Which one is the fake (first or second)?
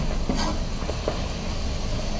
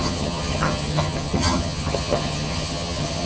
second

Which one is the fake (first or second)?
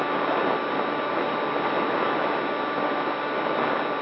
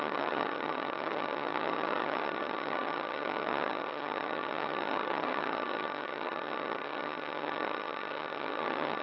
second